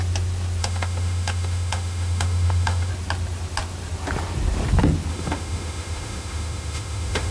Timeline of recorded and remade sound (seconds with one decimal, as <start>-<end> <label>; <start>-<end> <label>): 0.0-0.6 recorded; 0.6-2.9 remade; 2.9-5.1 recorded; 5.1-7.3 remade